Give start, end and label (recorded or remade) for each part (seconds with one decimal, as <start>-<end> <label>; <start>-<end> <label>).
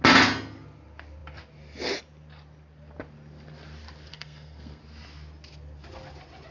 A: 0.0-4.1 recorded; 4.1-4.8 remade; 4.8-6.5 recorded